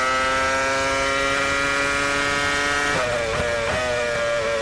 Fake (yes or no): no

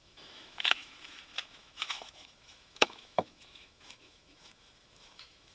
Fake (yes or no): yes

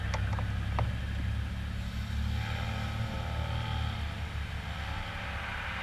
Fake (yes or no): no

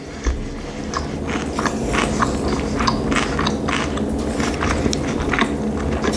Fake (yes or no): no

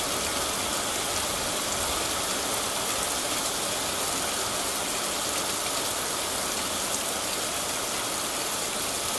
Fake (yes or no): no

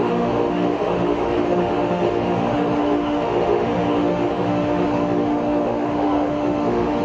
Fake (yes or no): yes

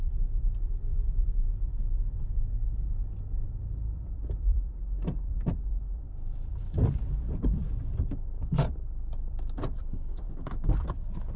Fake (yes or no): yes